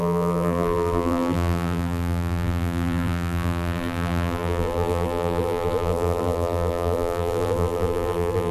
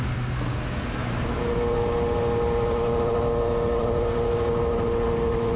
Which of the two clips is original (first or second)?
second